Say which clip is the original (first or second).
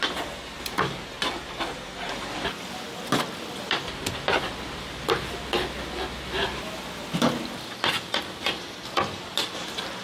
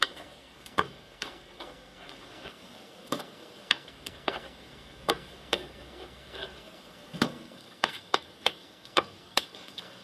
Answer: first